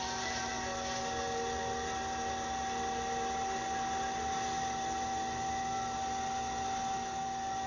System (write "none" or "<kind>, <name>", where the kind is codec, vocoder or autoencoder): none